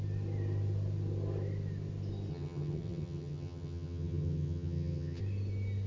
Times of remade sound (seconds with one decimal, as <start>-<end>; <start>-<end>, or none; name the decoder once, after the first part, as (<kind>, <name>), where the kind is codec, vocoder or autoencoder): 2.3-5.2 (vocoder, HiFi-GAN)